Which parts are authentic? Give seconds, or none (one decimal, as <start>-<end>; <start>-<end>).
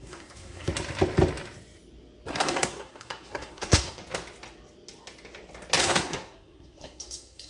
0.7-2.3; 4.0-5.8